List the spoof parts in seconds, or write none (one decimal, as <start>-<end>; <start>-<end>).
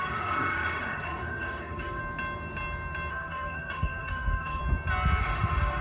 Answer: 0.0-2.0; 3.1-4.6; 5.2-5.8